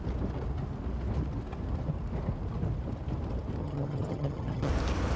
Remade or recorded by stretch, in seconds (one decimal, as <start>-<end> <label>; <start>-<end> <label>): 0.0-3.6 recorded; 3.6-4.7 remade; 4.7-5.2 recorded